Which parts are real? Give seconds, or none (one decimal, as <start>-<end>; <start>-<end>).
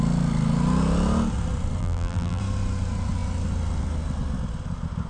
0.0-1.8; 2.4-5.1